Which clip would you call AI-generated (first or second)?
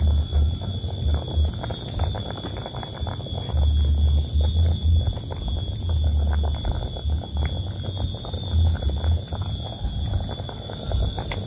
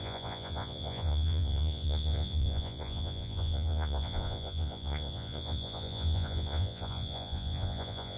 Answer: second